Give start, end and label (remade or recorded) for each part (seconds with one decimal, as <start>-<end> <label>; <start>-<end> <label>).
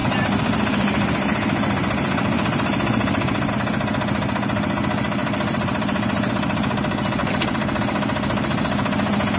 0.0-3.5 remade; 3.5-5.2 recorded; 5.2-6.3 remade; 6.3-7.2 recorded; 7.2-7.8 remade; 7.8-9.4 recorded